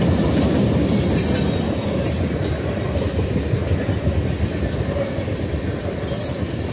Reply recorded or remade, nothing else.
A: recorded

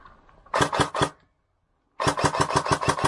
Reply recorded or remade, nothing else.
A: recorded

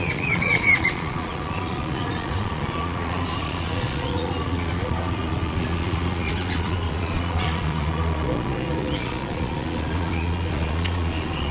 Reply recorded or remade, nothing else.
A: remade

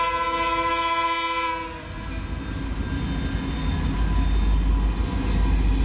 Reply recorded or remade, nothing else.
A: recorded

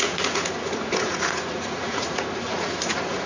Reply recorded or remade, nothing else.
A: remade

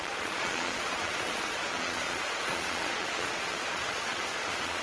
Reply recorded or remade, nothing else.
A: remade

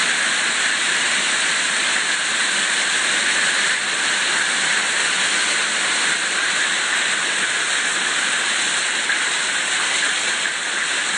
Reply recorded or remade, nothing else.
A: recorded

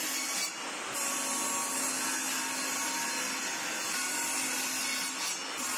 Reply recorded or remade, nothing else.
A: recorded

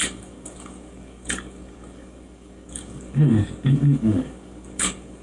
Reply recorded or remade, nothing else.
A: remade